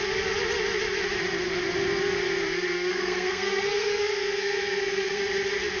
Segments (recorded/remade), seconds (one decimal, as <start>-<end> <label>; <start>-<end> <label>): 0.0-2.9 recorded; 2.9-5.2 remade; 5.2-5.8 recorded